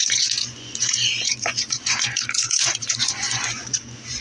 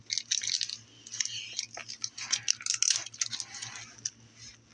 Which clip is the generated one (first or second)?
first